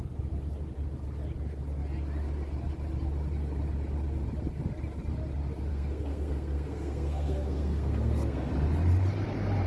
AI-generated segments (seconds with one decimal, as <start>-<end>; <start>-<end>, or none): 5.7-8.5

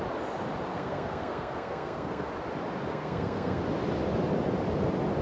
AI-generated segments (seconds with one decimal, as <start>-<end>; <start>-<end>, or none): 0.7-2.3; 2.9-3.6